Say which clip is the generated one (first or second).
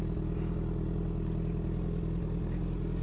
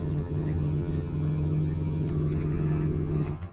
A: second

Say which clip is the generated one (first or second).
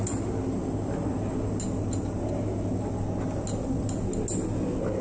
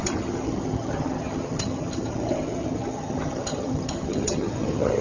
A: second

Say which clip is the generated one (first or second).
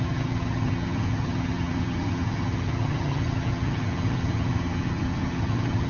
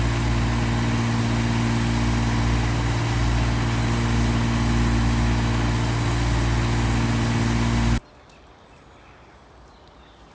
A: first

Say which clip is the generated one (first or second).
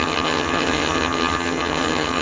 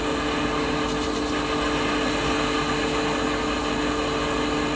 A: first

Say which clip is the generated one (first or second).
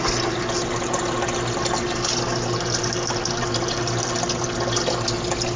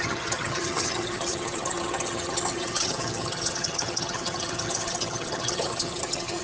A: second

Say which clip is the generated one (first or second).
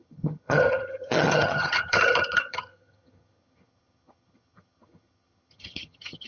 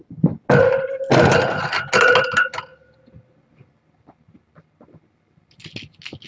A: first